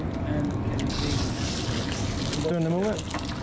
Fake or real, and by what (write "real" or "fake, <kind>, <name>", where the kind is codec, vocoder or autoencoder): real